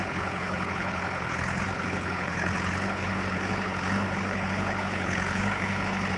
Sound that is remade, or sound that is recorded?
remade